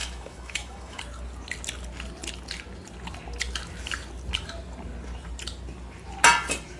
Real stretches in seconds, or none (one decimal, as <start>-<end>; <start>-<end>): 1.0-6.8